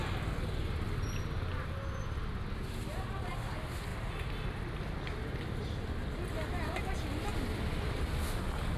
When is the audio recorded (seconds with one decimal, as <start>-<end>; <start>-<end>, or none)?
0.0-8.8